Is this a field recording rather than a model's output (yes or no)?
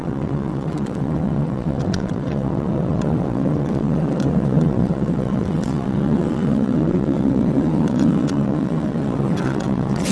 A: no